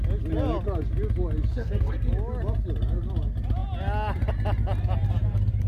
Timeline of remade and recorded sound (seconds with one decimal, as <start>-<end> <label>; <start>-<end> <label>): 0.0-1.5 recorded; 1.5-2.1 remade; 2.1-5.7 recorded